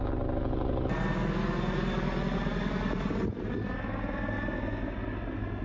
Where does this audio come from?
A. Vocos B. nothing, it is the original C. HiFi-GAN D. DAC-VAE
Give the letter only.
B